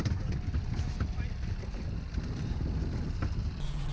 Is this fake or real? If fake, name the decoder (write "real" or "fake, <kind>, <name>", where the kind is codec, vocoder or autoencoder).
real